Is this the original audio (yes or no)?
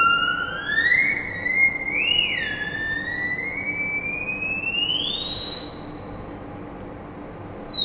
yes